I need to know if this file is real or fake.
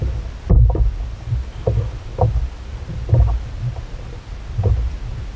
real